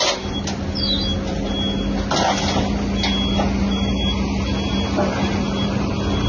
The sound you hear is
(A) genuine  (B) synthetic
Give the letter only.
A